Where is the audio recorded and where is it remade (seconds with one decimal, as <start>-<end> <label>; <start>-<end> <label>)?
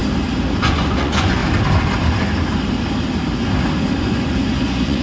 0.0-0.6 recorded; 0.6-1.4 remade; 1.4-4.0 recorded; 4.0-5.0 remade